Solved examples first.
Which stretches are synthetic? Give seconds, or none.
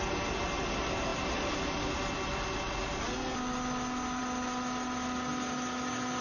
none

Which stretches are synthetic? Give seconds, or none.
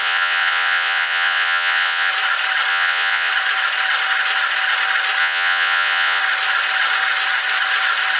0.0-2.1 (vocoder, Vocos); 2.7-3.3; 5.2-6.2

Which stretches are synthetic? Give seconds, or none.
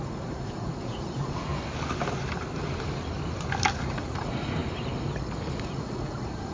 0.0-1.5 (vocoder, Vocos); 3.7-4.6; 5.6-6.5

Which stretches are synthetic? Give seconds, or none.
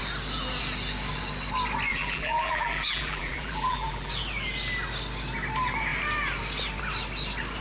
1.9-4.1 (vocoder, BigVGAN v2)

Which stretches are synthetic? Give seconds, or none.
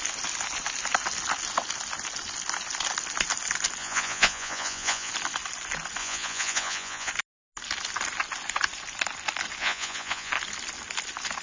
3.8-5.1 (vocoder, Vocos); 6.0-7.1; 9.6-10.3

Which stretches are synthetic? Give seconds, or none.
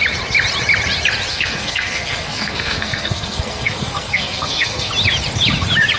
1.3-4.9 (codec, SNAC)